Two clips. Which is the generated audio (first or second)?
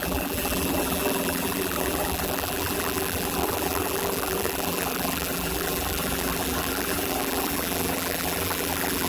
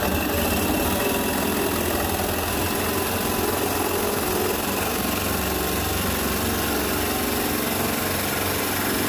first